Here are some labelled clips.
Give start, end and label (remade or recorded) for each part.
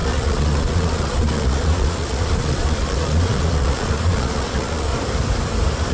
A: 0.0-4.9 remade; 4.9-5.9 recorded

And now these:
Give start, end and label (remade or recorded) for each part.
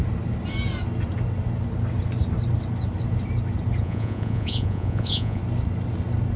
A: 0.0-3.8 recorded; 3.8-5.4 remade; 5.4-6.4 recorded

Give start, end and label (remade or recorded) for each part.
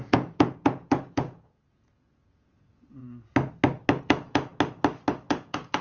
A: 0.0-3.0 remade; 3.0-4.0 recorded; 4.0-4.5 remade; 4.5-5.3 recorded; 5.3-5.8 remade